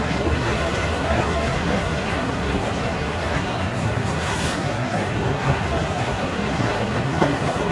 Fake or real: fake